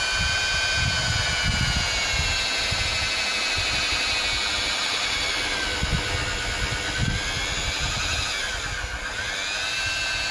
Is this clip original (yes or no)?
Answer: yes